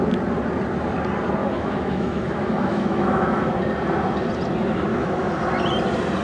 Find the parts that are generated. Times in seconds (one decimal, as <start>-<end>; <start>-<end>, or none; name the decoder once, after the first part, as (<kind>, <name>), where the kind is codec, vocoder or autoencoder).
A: 1.4-3.6 (autoencoder, DAC-VAE); 4.9-5.5